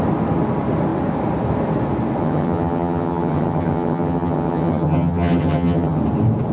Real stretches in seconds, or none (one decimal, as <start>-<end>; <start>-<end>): 0.0-2.2; 6.0-6.5